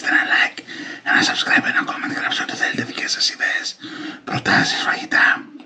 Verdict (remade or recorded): remade